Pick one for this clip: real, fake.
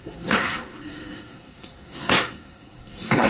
fake